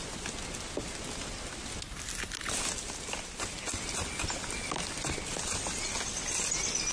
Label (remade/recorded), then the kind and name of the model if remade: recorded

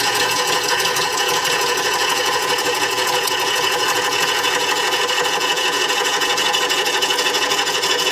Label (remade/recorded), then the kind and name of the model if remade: remade, vocoder, Vocos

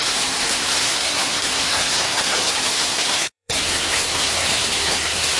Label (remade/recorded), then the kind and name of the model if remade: remade, codec, SNAC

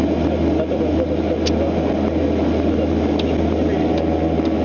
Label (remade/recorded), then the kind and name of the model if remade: recorded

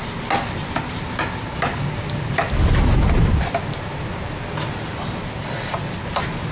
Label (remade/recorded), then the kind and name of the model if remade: recorded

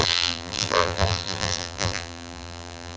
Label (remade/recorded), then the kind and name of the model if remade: remade, vocoder, BigVGAN v2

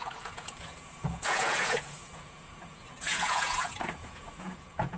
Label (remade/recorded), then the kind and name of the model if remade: remade, vocoder, Vocos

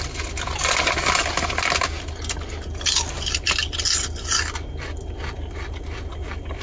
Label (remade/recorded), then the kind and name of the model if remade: recorded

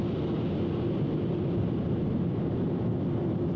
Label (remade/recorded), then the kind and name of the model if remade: recorded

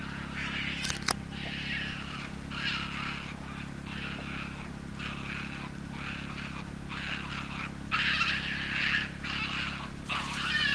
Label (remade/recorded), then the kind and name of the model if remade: recorded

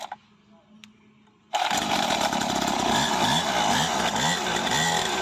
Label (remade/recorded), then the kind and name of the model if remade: recorded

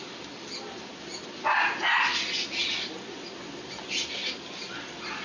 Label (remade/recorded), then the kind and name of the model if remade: recorded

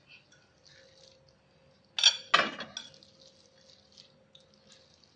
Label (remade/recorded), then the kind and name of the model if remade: recorded